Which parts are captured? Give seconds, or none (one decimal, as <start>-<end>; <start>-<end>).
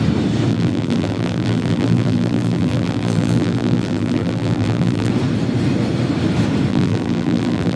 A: 0.0-0.5; 5.1-6.7